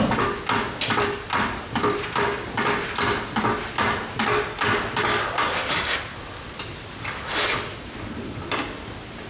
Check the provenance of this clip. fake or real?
real